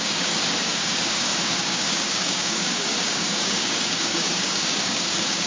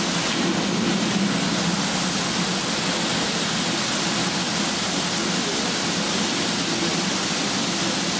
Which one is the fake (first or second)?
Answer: first